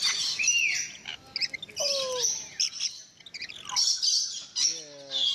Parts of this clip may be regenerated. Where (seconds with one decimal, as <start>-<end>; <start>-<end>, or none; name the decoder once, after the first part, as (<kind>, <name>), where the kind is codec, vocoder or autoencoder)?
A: none

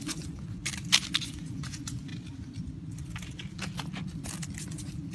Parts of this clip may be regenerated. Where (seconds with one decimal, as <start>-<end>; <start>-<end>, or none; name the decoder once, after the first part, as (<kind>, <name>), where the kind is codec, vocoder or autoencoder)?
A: 0.0-0.6 (vocoder, Vocos); 1.2-2.1; 4.6-5.1

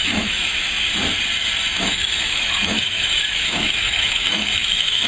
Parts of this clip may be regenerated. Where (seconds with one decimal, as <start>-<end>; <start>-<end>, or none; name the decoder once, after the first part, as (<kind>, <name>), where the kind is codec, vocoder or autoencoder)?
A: 0.0-0.6 (autoencoder, DAC-VAE); 1.8-5.1

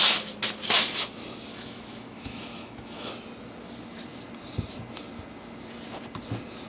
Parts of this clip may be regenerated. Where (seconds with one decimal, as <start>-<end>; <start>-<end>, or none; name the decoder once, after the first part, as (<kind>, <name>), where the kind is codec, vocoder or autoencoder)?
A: 1.5-3.1 (autoencoder, DAC-VAE)

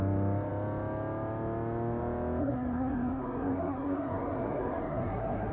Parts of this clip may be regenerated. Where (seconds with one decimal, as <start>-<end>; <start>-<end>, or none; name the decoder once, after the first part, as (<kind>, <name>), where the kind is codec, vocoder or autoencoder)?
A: 2.4-5.5 (codec, SNAC)

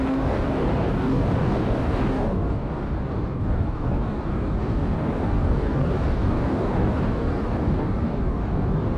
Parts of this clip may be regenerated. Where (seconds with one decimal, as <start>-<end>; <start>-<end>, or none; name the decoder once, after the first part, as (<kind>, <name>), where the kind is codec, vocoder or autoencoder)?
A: 0.0-9.0 (codec, DAC)

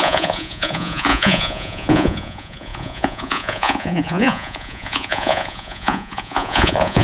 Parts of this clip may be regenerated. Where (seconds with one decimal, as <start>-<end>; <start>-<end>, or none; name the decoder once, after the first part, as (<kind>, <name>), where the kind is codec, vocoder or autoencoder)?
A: 0.0-7.0 (vocoder, Vocos)

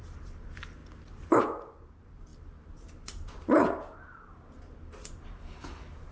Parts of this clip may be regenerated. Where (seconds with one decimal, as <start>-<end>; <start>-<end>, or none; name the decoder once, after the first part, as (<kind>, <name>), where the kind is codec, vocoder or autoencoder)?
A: 0.0-0.8 (vocoder, BigVGAN v2); 1.4-6.1